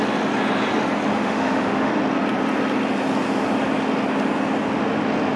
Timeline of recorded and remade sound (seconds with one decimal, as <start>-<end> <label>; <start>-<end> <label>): 0.0-1.1 recorded; 1.1-1.9 remade; 1.9-5.4 recorded